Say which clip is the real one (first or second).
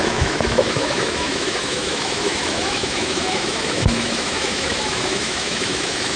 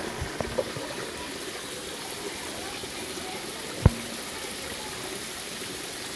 second